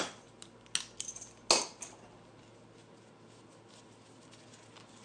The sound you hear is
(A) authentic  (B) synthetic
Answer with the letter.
A